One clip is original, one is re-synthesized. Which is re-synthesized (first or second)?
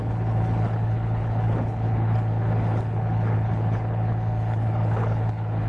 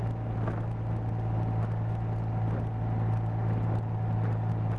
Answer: first